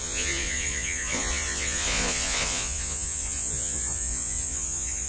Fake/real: fake